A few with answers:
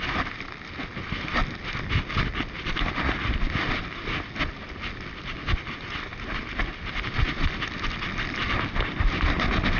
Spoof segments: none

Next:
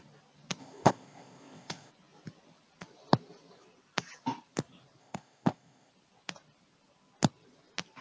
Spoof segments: 0.6-1.9 (codec, ZipCodec); 5.0-5.9

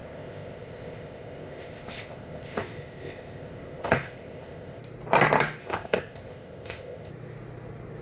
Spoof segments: 0.0-4.8 (codec, ZipCodec); 5.6-7.1